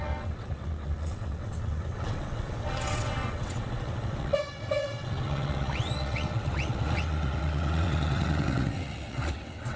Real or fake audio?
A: fake